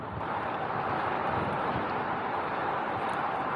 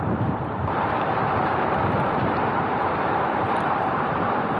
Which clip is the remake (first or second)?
second